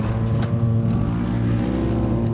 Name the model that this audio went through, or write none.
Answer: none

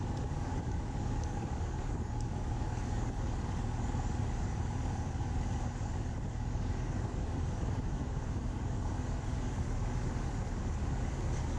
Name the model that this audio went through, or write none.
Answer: codec, DAC